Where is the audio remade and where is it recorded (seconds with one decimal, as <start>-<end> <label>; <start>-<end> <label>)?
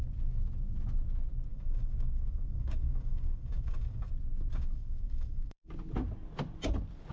0.0-1.5 recorded; 1.5-4.1 remade; 4.1-4.5 recorded; 4.5-5.7 remade; 5.7-7.1 recorded